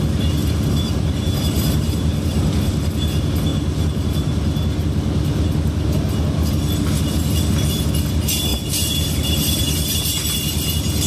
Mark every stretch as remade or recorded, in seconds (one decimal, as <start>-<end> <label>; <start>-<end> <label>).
0.0-0.4 recorded; 0.4-2.9 remade; 2.9-8.5 recorded; 8.5-9.9 remade; 9.9-11.1 recorded